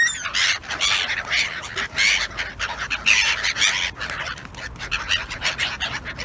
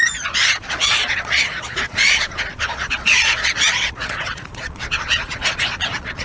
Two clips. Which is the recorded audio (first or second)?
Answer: first